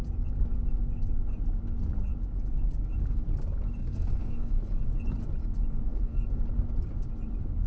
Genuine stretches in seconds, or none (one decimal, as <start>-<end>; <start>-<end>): 0.0-3.8; 4.5-5.9; 6.4-7.7